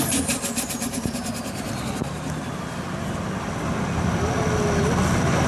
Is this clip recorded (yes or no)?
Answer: yes